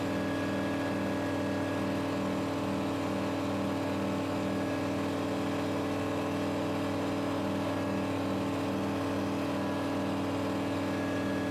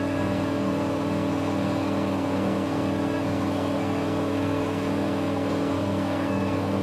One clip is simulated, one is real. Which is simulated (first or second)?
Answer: second